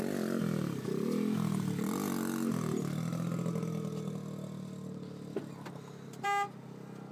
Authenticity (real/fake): real